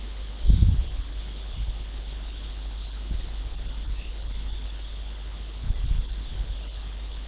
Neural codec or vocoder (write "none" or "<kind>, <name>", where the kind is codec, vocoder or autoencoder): codec, HILCodec